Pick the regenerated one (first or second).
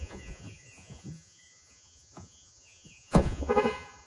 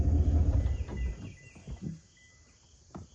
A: first